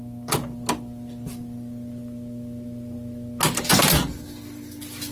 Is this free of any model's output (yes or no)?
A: yes